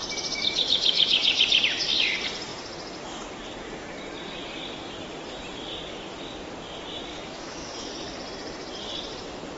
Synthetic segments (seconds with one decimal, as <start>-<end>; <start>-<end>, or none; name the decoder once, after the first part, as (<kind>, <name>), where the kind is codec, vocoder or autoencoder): 0.4-1.4 (autoencoder, DAC-VAE); 7.1-7.9